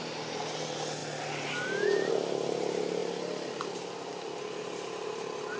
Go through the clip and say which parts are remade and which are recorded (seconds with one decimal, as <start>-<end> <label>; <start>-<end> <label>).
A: 0.0-5.6 recorded

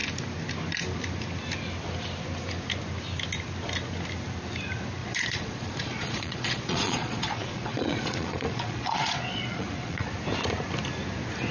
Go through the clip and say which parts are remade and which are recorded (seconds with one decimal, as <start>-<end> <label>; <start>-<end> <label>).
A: 0.0-5.0 recorded; 5.0-10.1 remade; 10.1-11.5 recorded

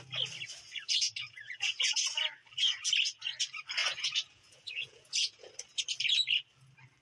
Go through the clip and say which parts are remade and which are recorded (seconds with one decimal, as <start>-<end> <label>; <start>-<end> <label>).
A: 0.0-1.2 recorded; 1.2-2.0 remade; 2.0-3.8 recorded; 3.8-5.5 remade; 5.5-7.0 recorded

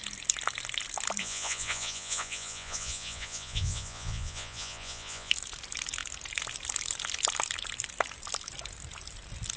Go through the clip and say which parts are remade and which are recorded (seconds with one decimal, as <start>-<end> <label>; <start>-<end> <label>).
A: 0.0-1.2 recorded; 1.2-5.3 remade; 5.3-9.6 recorded

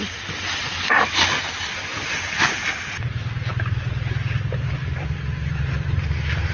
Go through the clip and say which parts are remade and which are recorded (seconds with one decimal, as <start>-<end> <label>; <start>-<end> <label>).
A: 0.0-6.5 recorded

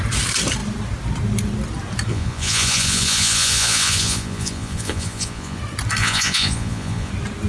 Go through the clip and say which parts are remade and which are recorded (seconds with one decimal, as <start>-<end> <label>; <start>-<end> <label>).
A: 0.0-2.1 recorded; 2.1-5.6 remade; 5.6-6.0 recorded; 6.0-7.1 remade; 7.1-7.5 recorded

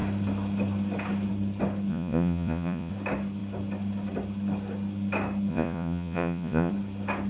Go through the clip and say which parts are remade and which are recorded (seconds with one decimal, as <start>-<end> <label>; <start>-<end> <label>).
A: 0.0-1.9 recorded; 1.9-2.9 remade; 2.9-5.5 recorded; 5.5-6.7 remade; 6.7-7.3 recorded

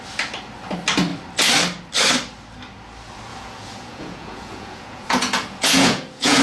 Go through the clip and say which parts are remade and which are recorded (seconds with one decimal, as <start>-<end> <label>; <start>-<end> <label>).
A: 0.0-3.3 recorded; 3.3-6.4 remade